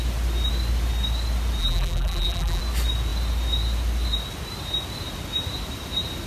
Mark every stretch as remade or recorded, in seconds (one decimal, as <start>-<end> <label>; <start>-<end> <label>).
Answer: 0.0-1.6 recorded; 1.6-2.6 remade; 2.6-6.3 recorded